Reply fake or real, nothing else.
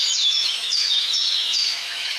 fake